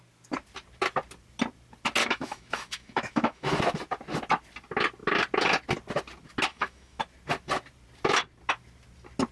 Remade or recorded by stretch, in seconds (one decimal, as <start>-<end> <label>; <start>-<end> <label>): 0.0-2.0 recorded; 2.0-3.6 remade; 3.6-6.5 recorded; 6.5-7.0 remade; 7.0-9.3 recorded